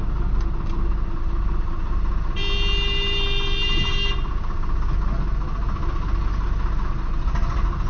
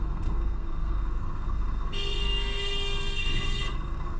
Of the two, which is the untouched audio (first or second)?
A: first